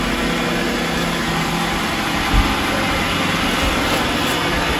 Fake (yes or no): no